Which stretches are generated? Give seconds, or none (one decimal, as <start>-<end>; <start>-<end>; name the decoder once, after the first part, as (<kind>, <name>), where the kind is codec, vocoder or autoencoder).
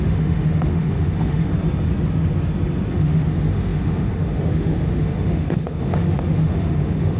0.0-1.5 (autoencoder, DAC-VAE); 2.9-7.2